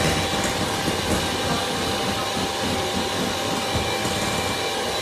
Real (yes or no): yes